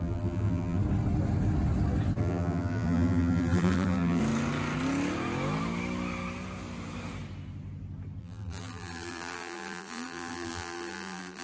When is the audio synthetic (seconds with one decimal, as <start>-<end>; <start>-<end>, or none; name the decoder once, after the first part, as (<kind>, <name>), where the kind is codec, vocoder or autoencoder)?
0.0-0.8 (vocoder, BigVGAN v2); 2.2-4.2; 8.2-11.4